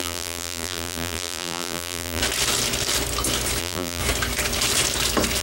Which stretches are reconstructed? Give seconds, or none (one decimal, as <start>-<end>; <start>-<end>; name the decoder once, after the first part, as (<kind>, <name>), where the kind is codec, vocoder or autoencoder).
0.0-2.2 (vocoder, BigVGAN v2); 3.6-4.0